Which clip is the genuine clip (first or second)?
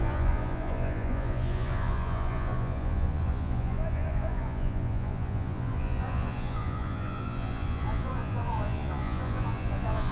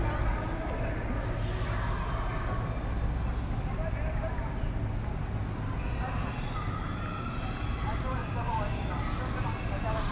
second